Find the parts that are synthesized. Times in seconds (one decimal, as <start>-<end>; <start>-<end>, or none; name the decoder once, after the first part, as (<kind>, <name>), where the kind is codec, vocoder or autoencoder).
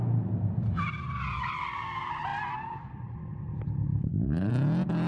3.9-4.5 (codec, HILCodec)